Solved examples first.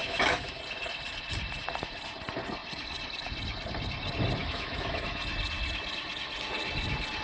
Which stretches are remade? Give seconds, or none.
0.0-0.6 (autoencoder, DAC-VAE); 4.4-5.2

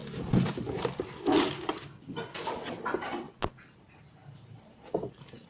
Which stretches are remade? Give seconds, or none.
none

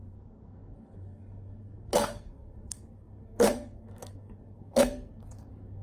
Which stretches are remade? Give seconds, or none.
0.0-5.8 (codec, SNAC)

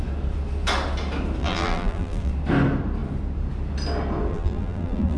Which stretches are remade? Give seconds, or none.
1.4-2.3 (vocoder, BigVGAN v2); 4.3-5.2